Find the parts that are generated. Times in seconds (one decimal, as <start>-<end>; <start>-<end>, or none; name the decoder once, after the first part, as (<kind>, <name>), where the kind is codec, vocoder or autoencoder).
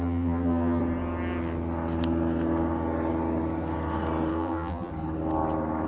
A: 0.0-0.8 (vocoder, BigVGAN v2); 4.3-4.9